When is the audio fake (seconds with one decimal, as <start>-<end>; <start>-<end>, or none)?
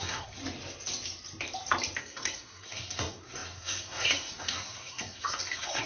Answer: 0.0-0.4; 2.0-5.9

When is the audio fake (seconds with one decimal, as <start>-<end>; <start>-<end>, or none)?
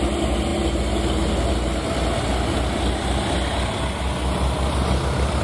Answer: none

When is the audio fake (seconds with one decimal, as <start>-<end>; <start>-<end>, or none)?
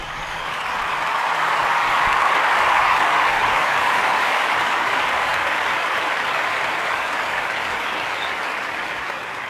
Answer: 0.0-9.5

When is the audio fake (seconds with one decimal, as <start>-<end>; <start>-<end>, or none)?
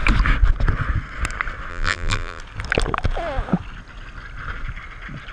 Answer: 1.7-2.4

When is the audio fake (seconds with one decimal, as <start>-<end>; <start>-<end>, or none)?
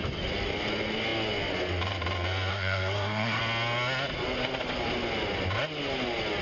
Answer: 2.5-3.4